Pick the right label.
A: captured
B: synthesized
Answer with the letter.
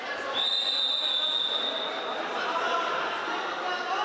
A